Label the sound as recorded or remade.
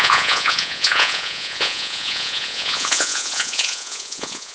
remade